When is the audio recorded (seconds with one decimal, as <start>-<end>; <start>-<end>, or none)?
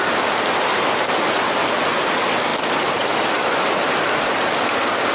0.0-5.1